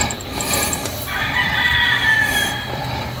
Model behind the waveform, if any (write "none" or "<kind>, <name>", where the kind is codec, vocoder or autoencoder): vocoder, BigVGAN v2